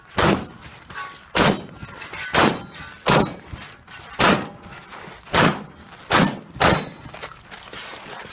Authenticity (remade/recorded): recorded